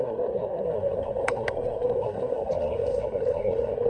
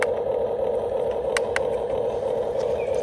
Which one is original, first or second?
second